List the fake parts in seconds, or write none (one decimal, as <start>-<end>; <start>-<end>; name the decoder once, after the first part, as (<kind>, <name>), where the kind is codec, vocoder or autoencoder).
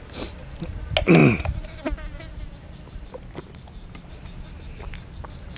none